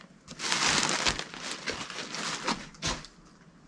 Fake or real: real